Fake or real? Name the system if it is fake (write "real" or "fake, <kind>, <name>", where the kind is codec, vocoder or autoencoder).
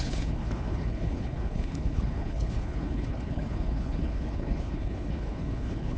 fake, codec, HILCodec